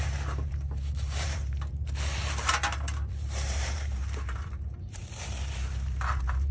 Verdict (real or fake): fake